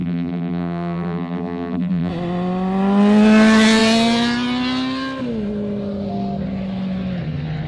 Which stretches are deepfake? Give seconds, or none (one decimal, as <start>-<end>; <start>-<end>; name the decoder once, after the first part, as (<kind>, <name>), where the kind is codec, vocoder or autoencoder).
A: 0.0-2.1 (vocoder, BigVGAN v2)